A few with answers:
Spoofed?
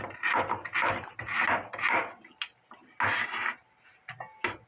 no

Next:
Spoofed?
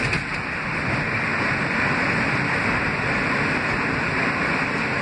no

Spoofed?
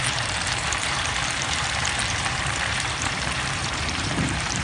yes